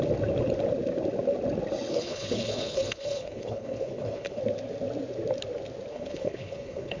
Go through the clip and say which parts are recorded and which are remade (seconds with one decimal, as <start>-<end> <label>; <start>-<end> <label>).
0.0-1.9 recorded; 1.9-4.4 remade; 4.4-5.9 recorded; 5.9-7.0 remade